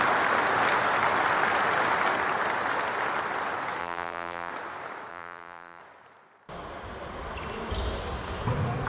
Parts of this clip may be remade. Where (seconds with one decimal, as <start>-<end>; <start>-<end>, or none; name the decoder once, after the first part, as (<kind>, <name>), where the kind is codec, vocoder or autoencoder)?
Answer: 3.8-4.5 (vocoder, BigVGAN v2); 5.1-5.8